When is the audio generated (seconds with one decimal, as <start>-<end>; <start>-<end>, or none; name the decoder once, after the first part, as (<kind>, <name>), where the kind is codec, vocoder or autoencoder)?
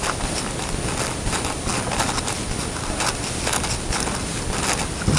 none